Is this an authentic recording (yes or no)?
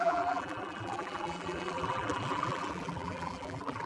no